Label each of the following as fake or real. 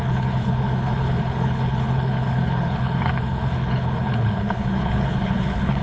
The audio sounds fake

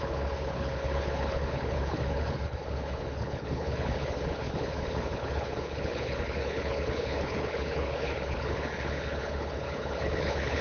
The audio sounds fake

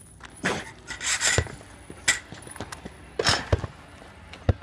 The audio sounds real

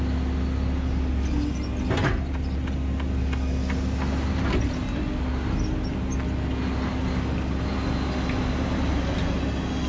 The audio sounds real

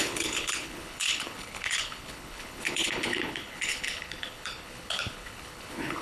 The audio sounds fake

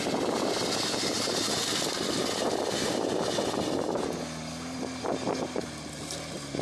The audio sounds real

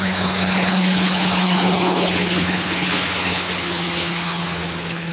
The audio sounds fake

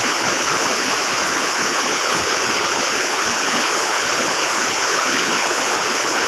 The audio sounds fake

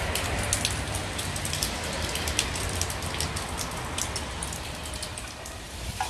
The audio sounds real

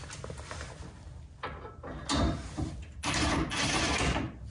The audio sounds real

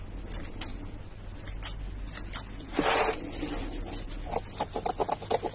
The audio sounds real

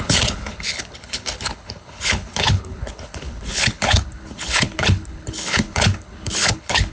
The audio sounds fake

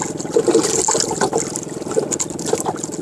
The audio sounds real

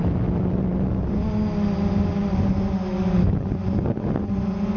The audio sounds real